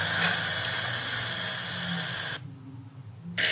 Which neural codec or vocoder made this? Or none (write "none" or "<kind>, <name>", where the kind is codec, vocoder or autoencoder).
none